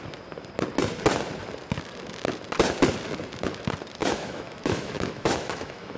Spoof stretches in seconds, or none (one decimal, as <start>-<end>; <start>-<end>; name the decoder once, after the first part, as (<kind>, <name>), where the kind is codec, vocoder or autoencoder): 4.0-6.0 (autoencoder, DAC-VAE)